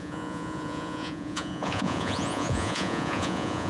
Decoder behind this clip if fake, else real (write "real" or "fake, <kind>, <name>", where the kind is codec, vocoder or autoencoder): fake, vocoder, Vocos